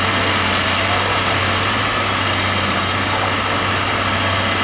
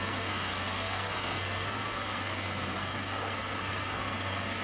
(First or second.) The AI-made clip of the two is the second